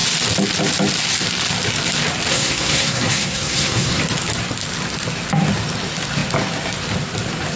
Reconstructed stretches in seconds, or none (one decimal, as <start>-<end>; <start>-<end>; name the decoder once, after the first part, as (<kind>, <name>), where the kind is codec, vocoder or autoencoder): 2.3-4.0 (codec, SNAC)